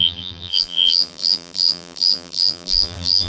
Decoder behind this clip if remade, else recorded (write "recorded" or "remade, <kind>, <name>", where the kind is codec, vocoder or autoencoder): remade, vocoder, BigVGAN v2